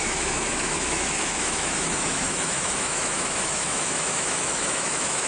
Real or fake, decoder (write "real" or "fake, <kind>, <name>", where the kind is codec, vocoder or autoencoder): fake, autoencoder, DAC-VAE